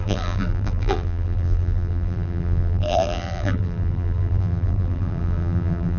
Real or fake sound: fake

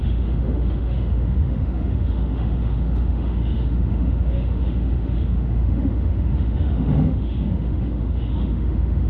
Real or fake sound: fake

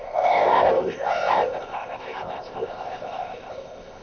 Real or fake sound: fake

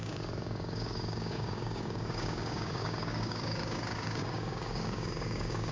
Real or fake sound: fake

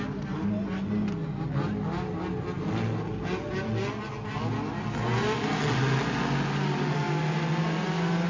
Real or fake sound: real